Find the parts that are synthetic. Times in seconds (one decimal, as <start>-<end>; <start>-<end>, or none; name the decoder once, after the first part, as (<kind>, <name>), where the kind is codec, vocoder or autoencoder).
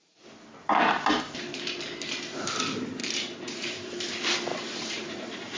3.0-3.9 (vocoder, BigVGAN v2); 4.5-5.6